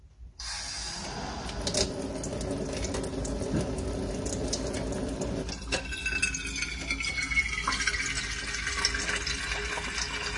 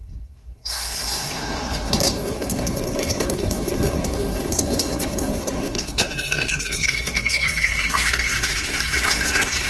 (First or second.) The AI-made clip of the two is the second